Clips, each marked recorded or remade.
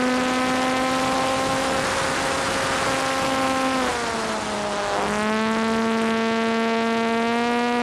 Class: recorded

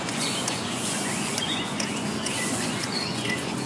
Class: remade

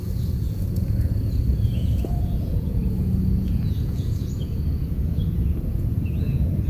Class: remade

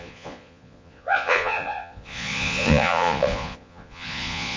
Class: remade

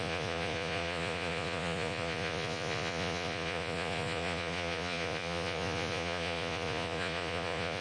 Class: remade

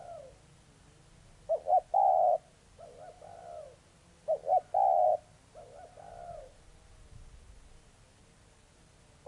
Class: recorded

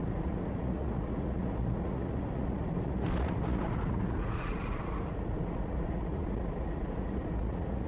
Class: remade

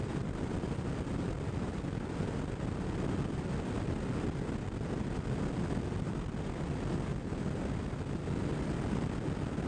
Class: recorded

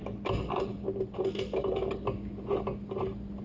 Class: recorded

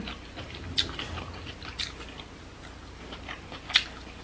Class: recorded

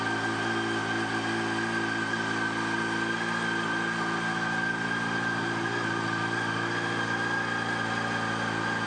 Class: recorded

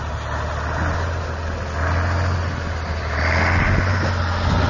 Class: recorded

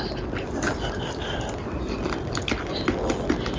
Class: recorded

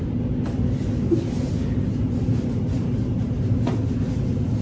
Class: recorded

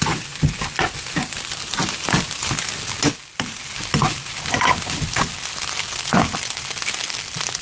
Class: recorded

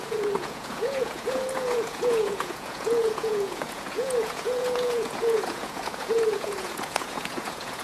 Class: remade